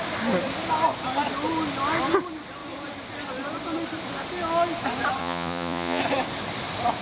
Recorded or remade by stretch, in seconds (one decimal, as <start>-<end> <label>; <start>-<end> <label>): 0.0-5.2 recorded; 5.2-6.0 remade; 6.0-7.0 recorded